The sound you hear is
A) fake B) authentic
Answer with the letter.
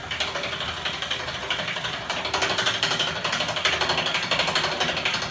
B